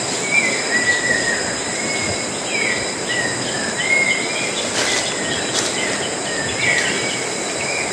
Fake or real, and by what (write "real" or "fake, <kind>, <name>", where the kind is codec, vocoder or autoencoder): real